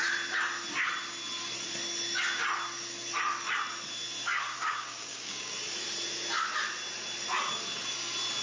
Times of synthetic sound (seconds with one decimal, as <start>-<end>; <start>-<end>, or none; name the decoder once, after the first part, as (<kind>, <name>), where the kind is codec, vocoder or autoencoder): 4.3-5.5 (codec, DAC)